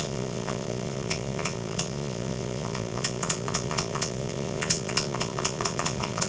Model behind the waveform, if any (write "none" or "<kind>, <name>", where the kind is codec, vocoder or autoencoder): vocoder, Vocos